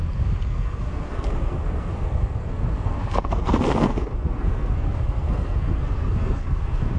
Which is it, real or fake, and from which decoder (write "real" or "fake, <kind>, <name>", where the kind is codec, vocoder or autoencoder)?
fake, codec, SNAC